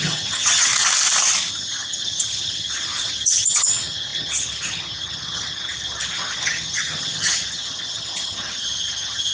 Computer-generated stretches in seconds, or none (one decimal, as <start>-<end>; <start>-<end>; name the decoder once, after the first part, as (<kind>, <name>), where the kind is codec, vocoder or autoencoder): 0.0-0.7 (vocoder, HiFi-GAN); 1.5-9.3